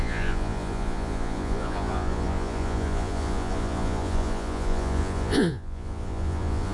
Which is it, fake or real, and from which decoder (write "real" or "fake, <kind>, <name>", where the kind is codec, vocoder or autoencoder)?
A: fake, vocoder, Vocos